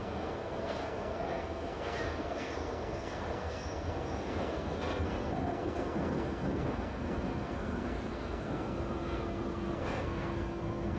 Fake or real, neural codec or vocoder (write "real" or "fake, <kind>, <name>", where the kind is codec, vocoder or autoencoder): fake, codec, SNAC